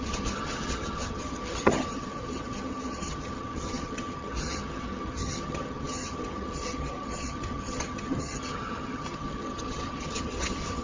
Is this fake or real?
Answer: fake